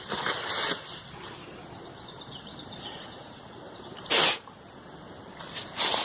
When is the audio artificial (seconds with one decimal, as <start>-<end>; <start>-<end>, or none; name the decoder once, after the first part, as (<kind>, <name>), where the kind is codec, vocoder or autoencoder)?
1.9-4.1 (vocoder, BigVGAN v2)